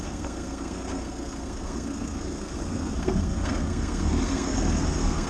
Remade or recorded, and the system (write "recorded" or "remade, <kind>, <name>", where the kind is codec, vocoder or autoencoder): remade, codec, SNAC